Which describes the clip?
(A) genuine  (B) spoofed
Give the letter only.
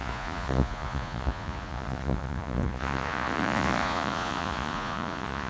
B